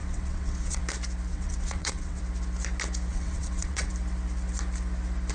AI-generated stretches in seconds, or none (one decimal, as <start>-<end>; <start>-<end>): 0.0-0.8; 1.3-2.2; 3.1-3.9